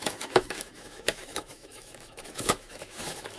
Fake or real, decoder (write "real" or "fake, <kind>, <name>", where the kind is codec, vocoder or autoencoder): fake, autoencoder, DAC-VAE